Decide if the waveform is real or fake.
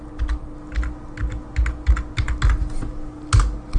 real